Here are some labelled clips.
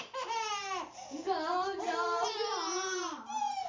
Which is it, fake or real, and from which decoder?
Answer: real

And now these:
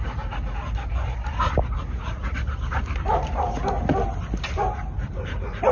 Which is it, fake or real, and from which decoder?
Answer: real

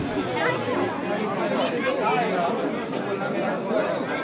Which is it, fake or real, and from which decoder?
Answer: real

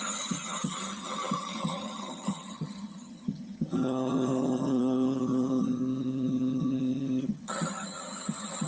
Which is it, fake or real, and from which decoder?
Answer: fake, vocoder, HiFi-GAN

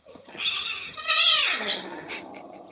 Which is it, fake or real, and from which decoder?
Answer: fake, vocoder, HiFi-GAN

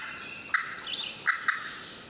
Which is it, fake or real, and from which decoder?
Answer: real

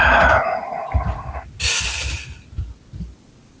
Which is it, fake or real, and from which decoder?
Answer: real